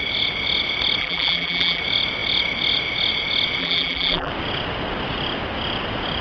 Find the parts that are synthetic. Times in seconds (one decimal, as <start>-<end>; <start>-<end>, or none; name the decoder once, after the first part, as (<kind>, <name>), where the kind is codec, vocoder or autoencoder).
1.0-1.8 (vocoder, BigVGAN v2); 3.6-4.3